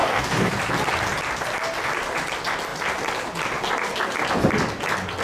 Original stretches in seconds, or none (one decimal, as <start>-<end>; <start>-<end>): 0.5-5.2